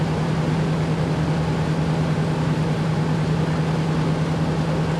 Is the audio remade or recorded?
recorded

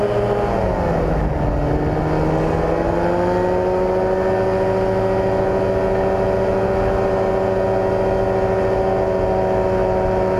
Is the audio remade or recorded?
recorded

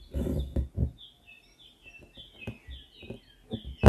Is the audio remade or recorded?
recorded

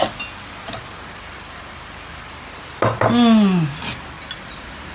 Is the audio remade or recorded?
recorded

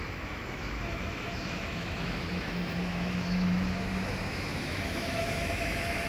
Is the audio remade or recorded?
remade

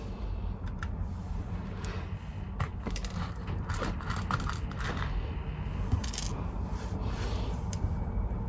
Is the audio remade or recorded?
recorded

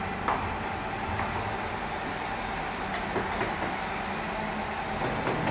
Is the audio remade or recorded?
recorded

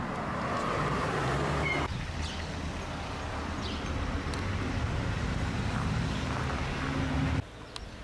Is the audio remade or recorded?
recorded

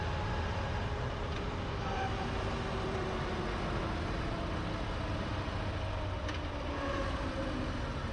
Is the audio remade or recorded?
recorded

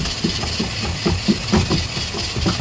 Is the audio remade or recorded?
recorded